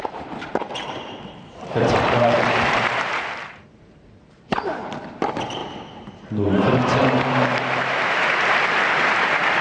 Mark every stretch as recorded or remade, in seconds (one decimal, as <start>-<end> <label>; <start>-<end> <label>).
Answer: 0.0-9.6 remade